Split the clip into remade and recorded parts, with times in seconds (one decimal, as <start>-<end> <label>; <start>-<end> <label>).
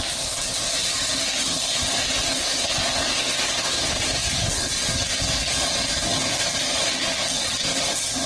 0.0-8.3 recorded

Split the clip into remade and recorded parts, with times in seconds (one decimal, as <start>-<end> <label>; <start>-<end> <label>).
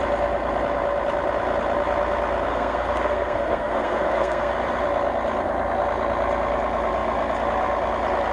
0.0-2.5 recorded; 2.5-4.5 remade; 4.5-8.3 recorded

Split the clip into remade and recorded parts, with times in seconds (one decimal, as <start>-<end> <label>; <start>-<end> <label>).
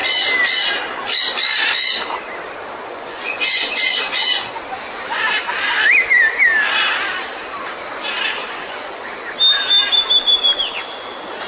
0.0-2.9 recorded; 2.9-4.6 remade; 4.6-8.4 recorded; 8.4-9.1 remade; 9.1-11.5 recorded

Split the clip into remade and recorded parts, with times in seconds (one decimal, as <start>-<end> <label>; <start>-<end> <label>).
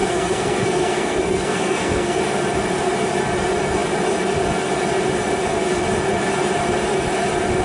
0.0-2.2 remade; 2.2-7.6 recorded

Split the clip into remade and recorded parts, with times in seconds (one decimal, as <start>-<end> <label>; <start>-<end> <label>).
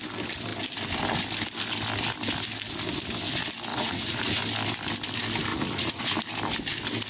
0.0-3.7 recorded; 3.7-4.4 remade; 4.4-5.5 recorded; 5.5-6.0 remade; 6.0-7.1 recorded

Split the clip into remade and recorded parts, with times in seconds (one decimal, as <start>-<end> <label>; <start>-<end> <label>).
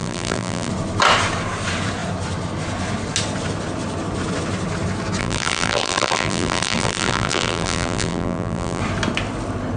0.0-0.7 remade; 0.7-5.2 recorded; 5.2-8.8 remade; 8.8-9.8 recorded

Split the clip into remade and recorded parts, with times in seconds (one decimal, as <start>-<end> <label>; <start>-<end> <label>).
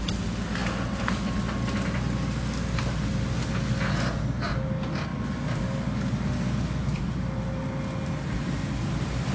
0.0-9.3 recorded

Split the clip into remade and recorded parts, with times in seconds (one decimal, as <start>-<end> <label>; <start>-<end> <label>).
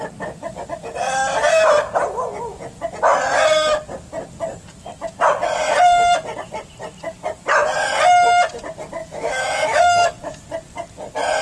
0.0-9.0 recorded; 9.0-10.4 remade; 10.4-11.4 recorded